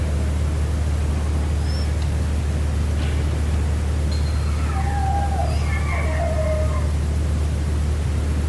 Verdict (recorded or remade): recorded